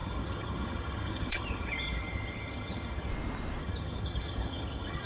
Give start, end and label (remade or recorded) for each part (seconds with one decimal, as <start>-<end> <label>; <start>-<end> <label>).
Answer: 0.0-3.1 remade; 3.1-3.6 recorded; 3.6-5.1 remade

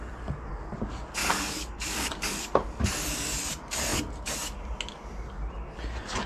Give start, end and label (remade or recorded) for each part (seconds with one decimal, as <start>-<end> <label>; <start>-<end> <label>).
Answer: 0.0-1.2 recorded; 1.2-2.8 remade; 2.8-6.3 recorded

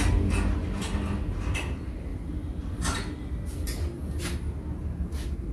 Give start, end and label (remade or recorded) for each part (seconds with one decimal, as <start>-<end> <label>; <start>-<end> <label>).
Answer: 0.0-2.1 recorded; 2.1-4.2 remade; 4.2-5.5 recorded

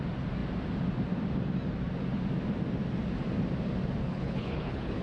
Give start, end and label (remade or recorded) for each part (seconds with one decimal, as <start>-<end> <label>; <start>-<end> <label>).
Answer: 0.0-4.0 recorded; 4.0-5.0 remade